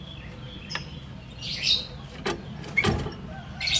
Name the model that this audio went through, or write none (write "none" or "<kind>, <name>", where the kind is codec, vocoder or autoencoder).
none